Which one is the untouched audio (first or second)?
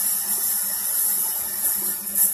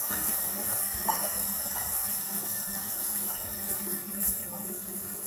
first